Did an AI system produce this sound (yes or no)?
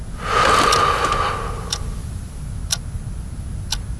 no